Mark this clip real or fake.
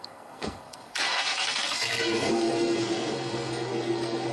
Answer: fake